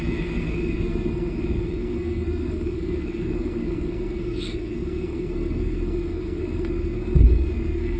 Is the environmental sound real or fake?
fake